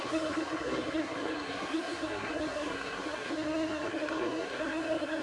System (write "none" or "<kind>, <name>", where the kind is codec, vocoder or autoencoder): codec, SNAC